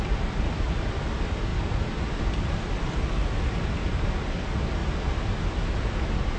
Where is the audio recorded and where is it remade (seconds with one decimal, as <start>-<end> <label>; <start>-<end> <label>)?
0.0-6.4 recorded